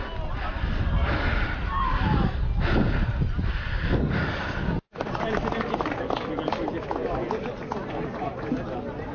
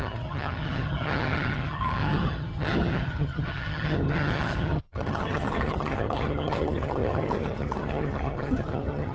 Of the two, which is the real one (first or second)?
first